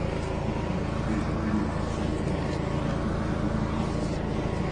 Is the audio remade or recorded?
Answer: recorded